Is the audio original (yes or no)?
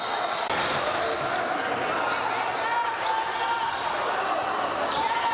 yes